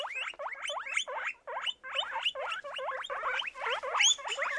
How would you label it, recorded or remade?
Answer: recorded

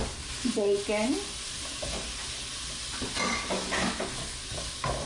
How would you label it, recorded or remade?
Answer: recorded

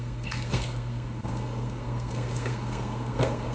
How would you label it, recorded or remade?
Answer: remade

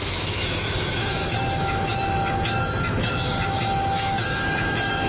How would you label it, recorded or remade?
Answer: remade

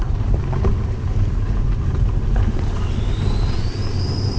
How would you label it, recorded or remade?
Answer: recorded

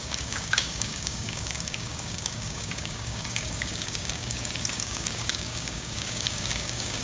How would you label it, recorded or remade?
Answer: remade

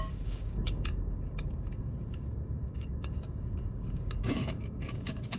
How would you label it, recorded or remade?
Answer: remade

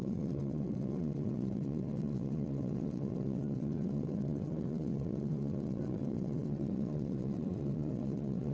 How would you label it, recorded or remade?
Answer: remade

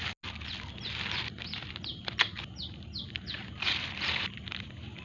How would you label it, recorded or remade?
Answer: recorded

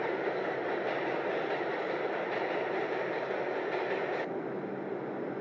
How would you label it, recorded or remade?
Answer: recorded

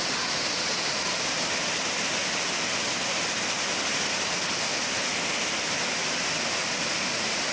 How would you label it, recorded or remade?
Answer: recorded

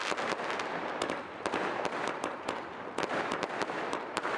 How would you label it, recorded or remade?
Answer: recorded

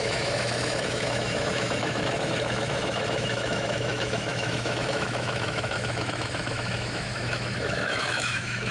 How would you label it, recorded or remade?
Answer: remade